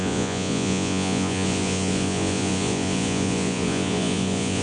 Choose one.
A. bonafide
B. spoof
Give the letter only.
B